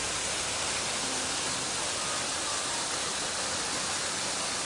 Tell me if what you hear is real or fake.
real